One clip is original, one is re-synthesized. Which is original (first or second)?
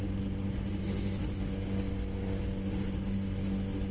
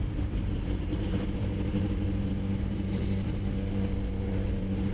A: first